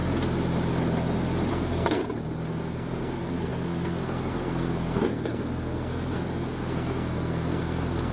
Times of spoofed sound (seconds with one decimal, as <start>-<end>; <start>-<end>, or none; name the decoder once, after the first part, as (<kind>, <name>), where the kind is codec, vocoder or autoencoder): 1.5-2.0 (codec, SNAC); 2.5-8.1